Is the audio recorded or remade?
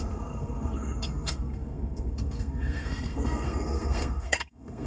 remade